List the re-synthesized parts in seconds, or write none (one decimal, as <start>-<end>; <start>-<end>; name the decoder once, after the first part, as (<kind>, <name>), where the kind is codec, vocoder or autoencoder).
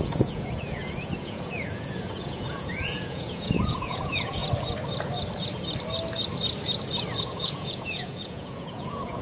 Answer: 0.0-4.4 (vocoder, Vocos); 7.2-9.2